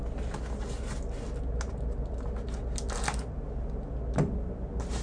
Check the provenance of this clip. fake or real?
real